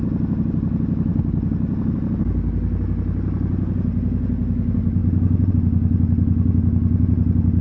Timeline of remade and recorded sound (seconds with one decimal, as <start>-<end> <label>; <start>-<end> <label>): 0.0-7.6 recorded